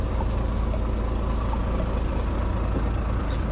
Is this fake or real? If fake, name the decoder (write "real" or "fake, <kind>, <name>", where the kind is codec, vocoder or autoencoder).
real